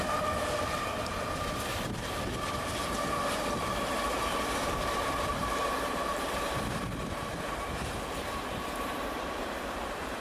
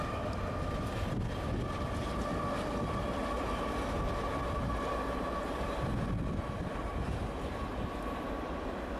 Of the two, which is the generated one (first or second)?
first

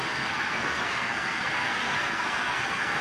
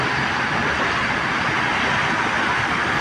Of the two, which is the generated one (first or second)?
first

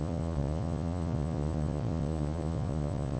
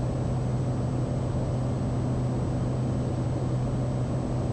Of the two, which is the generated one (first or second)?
first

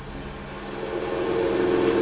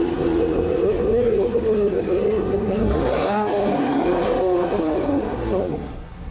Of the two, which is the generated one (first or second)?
second